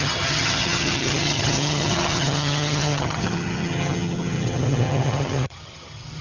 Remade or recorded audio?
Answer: remade